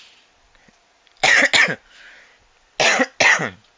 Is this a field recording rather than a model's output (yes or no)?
yes